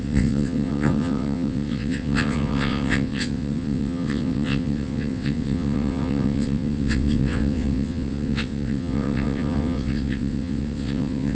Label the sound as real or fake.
fake